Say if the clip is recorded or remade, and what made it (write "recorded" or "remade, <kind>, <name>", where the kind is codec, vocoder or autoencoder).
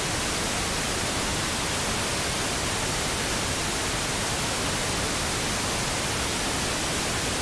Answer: recorded